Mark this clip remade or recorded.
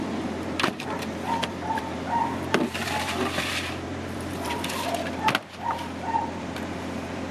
remade